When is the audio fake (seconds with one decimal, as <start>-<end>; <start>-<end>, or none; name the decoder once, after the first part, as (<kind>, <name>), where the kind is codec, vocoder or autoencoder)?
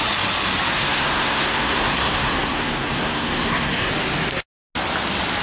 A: 0.7-3.9 (codec, SNAC)